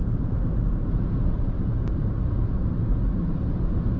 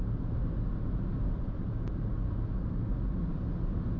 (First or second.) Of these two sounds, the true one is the second